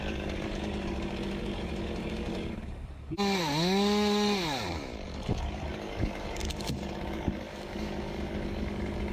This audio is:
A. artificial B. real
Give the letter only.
A